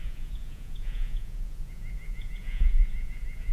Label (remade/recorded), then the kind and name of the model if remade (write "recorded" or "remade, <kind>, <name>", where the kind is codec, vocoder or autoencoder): remade, vocoder, Vocos